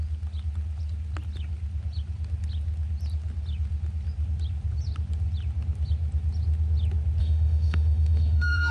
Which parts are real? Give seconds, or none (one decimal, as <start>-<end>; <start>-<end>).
0.0-7.2